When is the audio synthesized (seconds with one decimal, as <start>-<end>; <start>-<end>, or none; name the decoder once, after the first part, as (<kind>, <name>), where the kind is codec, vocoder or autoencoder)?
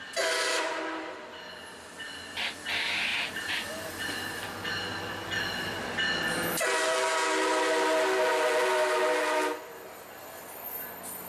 3.1-4.0 (vocoder, BigVGAN v2)